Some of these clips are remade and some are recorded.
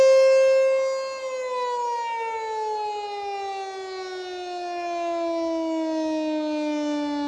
recorded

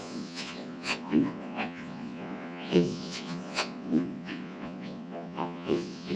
remade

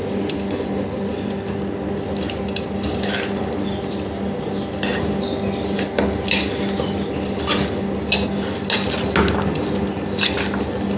recorded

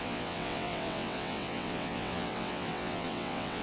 remade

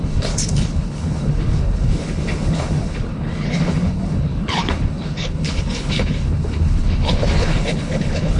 remade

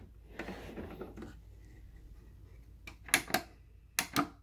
recorded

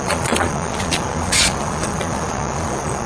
remade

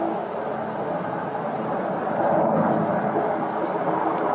recorded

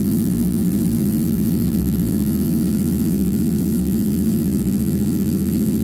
remade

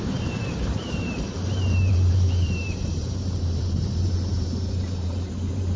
remade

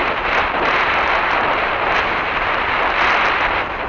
recorded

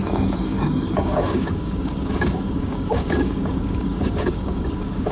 remade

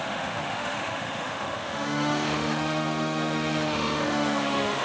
remade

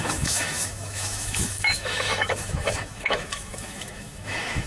remade